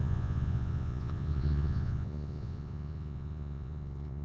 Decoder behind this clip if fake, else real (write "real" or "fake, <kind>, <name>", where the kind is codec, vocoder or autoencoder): fake, vocoder, Vocos